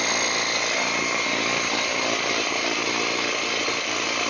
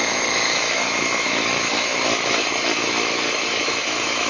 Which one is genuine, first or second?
first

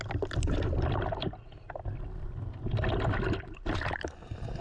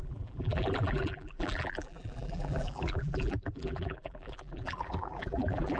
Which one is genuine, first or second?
first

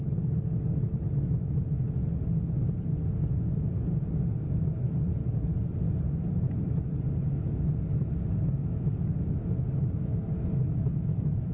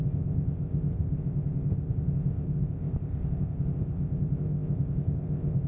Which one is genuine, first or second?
first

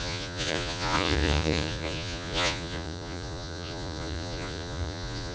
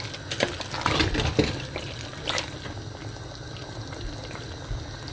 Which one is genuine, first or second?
second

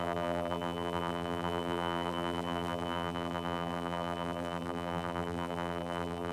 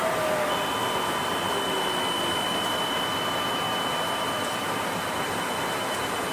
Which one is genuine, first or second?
second